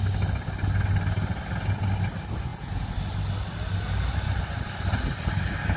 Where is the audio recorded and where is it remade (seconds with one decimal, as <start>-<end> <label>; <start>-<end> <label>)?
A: 0.0-5.8 recorded